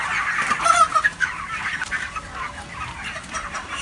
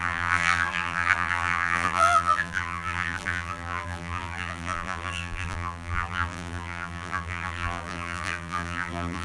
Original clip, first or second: first